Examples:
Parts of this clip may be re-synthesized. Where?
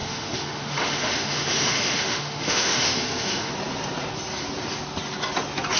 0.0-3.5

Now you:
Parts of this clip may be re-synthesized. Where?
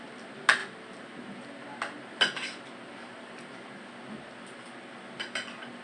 none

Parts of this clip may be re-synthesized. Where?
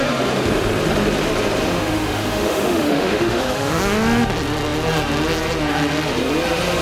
1.6-3.8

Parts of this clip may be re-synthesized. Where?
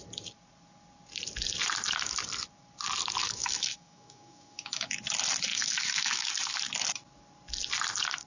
3.2-5.0; 5.5-6.3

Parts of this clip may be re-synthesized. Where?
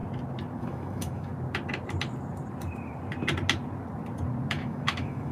0.6-1.3; 4.5-5.3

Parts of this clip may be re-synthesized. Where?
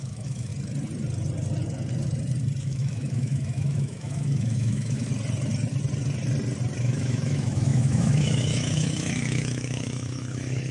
0.0-0.5; 2.6-5.1; 6.8-10.7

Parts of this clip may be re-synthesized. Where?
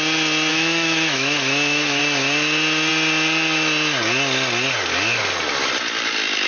0.5-2.0